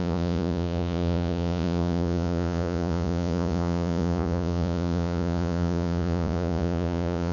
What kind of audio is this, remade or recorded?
remade